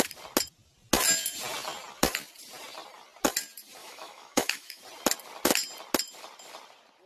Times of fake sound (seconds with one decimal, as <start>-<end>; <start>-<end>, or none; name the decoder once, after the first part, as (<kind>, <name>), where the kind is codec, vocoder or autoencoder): 3.8-4.8 (autoencoder, DAC-VAE)